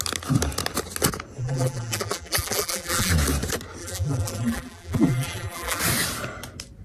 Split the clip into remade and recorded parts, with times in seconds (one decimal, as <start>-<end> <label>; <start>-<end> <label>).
0.0-1.4 recorded; 1.4-3.1 remade; 3.1-3.8 recorded; 3.8-5.8 remade; 5.8-6.8 recorded